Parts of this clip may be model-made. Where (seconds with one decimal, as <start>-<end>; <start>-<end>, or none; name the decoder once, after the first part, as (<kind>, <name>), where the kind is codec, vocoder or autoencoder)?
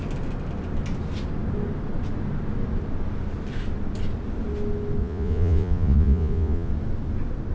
5.0-6.7 (vocoder, Vocos)